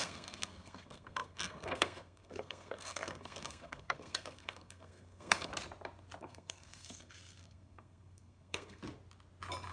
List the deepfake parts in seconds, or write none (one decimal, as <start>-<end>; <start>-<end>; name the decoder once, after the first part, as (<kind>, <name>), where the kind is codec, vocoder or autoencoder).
0.0-5.5 (codec, SNAC); 6.2-8.8